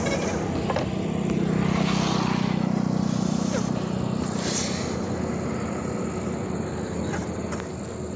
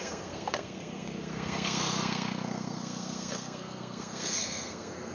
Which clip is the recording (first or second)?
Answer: first